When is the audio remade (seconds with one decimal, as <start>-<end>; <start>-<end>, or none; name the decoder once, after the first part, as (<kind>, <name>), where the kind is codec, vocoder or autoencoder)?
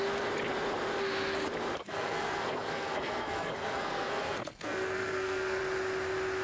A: 1.8-5.6 (codec, SNAC)